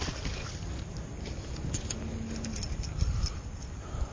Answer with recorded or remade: recorded